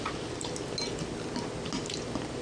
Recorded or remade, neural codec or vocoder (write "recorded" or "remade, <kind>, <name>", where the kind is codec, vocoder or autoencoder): recorded